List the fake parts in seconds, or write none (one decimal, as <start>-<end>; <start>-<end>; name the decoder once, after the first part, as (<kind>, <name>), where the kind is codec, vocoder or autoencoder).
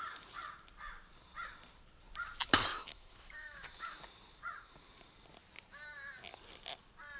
2.7-4.0 (autoencoder, DAC-VAE)